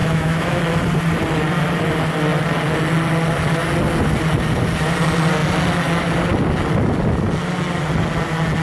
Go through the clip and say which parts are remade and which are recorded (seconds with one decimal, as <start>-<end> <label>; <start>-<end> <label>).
0.0-0.6 remade; 0.6-8.6 recorded

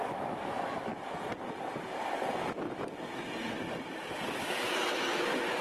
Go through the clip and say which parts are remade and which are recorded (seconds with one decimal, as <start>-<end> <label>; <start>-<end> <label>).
0.0-0.9 remade; 0.9-4.3 recorded; 4.3-5.6 remade

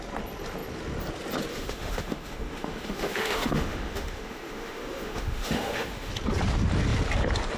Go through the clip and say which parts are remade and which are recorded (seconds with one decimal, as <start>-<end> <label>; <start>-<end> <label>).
0.0-1.5 recorded; 1.5-6.1 remade; 6.1-7.6 recorded

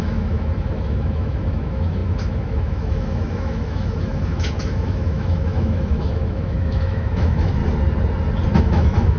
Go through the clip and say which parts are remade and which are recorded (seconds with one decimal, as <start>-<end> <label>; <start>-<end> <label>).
0.0-7.6 remade; 7.6-8.6 recorded; 8.6-9.2 remade